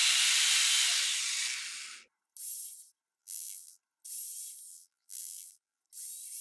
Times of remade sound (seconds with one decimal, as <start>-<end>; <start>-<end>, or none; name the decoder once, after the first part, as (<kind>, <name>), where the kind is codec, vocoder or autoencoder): 3.2-3.8 (vocoder, BigVGAN v2); 4.7-5.8